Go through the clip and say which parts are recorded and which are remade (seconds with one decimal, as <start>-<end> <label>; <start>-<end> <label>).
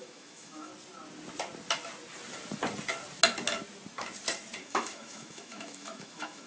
0.0-0.7 remade; 0.7-4.6 recorded; 4.6-6.5 remade